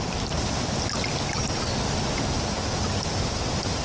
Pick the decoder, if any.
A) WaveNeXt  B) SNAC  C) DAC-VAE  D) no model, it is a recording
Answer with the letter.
D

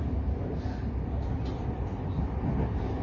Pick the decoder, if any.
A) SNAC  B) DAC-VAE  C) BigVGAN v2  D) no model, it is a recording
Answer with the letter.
D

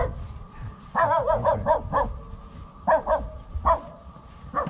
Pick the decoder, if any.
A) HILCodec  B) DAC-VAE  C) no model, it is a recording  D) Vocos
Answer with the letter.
C